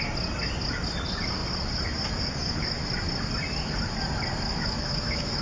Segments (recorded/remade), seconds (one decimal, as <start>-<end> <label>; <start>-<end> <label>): 0.0-4.5 recorded; 4.5-5.4 remade